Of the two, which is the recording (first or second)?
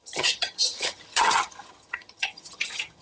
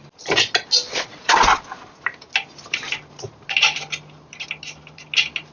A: second